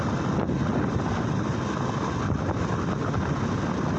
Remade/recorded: recorded